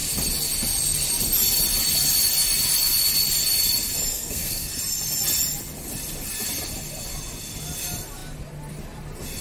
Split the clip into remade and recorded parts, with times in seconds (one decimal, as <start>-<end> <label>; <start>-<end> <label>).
0.0-4.1 recorded; 4.1-4.7 remade; 4.7-9.4 recorded